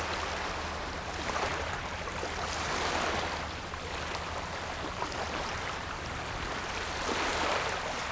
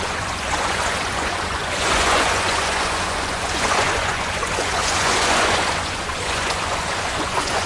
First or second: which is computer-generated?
second